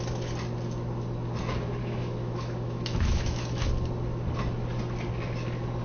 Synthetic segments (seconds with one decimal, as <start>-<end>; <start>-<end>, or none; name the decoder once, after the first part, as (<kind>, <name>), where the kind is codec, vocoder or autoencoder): 1.8-3.7 (autoencoder, DAC-VAE)

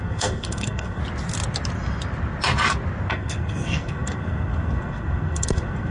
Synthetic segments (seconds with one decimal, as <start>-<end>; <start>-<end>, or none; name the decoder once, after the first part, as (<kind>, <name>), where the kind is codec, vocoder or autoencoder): 0.0-1.0 (codec, SNAC); 3.1-5.9

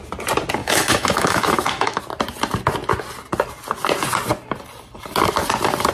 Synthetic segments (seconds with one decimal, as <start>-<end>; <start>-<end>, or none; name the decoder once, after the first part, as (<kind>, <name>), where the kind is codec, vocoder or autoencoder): 0.6-2.0 (autoencoder, DAC-VAE)

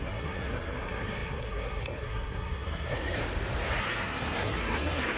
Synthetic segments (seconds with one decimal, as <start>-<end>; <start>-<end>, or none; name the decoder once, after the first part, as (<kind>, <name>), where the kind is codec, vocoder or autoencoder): 0.0-3.2 (codec, SNAC); 3.8-5.2